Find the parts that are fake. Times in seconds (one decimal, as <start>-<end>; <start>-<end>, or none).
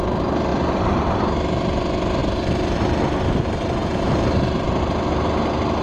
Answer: 2.2-3.0; 3.8-4.8